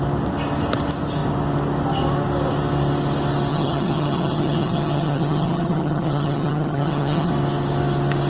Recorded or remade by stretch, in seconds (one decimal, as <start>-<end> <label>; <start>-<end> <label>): 0.0-3.5 recorded; 3.5-7.3 remade; 7.3-8.3 recorded